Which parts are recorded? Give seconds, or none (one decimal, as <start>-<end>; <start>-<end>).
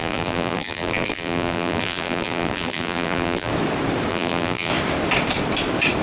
3.5-4.1; 4.7-6.0